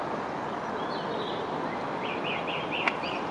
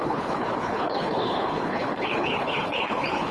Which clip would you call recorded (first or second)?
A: first